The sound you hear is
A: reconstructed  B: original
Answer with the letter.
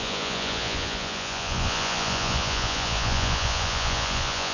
A